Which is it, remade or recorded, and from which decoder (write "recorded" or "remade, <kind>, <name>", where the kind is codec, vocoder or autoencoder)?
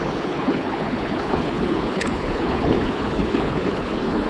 remade, codec, HILCodec